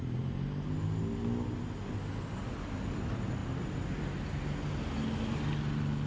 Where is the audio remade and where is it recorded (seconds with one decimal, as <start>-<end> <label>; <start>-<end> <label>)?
0.0-6.1 recorded